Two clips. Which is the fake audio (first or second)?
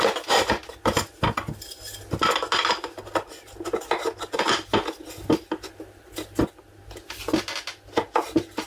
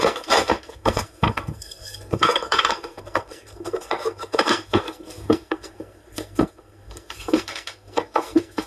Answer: second